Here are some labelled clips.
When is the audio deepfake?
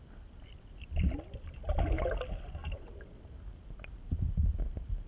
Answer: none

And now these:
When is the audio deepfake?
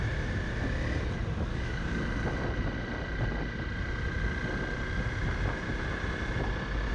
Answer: 1.5-2.0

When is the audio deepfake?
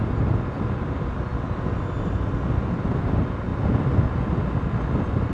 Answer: none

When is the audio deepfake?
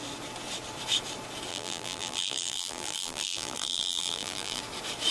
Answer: 1.5-4.6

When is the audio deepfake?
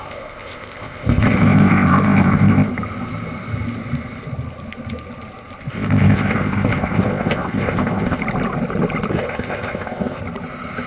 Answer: 0.0-2.7; 5.7-8.2; 9.1-10.2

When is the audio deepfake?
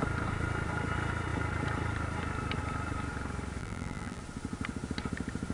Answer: 3.6-4.2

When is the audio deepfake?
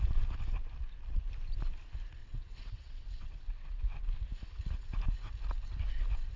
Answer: 2.2-3.8